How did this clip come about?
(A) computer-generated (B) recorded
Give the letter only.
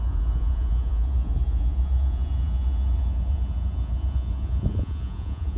A